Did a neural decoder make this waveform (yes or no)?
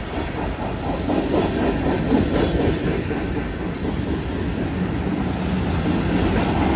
no